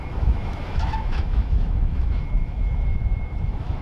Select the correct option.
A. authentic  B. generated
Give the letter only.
B